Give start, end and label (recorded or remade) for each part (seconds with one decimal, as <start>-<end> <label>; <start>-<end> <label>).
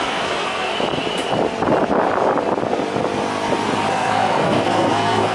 0.0-0.7 remade; 0.7-3.9 recorded; 3.9-5.3 remade